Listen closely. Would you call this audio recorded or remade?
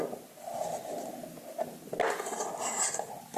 recorded